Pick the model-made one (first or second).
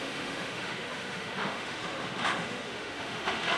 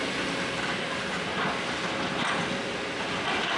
first